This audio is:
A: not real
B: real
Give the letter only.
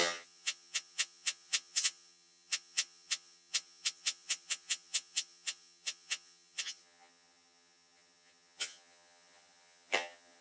A